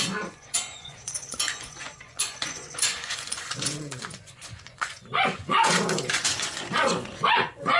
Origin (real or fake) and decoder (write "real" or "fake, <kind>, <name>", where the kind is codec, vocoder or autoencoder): fake, vocoder, Vocos